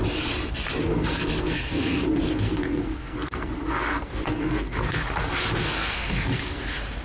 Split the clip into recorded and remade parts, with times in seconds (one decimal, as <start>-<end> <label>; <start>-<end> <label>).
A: 0.0-0.8 recorded; 0.8-5.0 remade; 5.0-5.6 recorded; 5.6-6.6 remade; 6.6-7.0 recorded